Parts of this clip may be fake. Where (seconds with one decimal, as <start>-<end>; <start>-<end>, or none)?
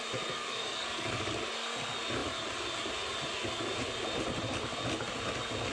0.4-1.4